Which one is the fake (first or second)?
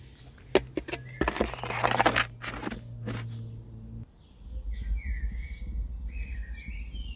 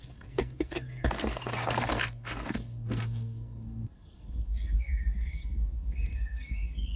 second